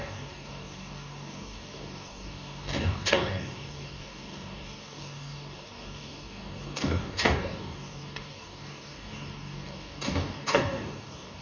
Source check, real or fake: fake